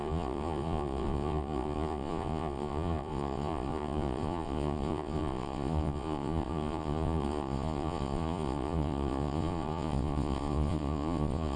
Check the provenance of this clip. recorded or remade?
remade